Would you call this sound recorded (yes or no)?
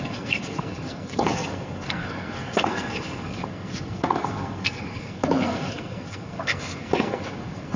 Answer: no